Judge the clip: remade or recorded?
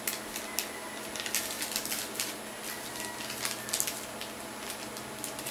recorded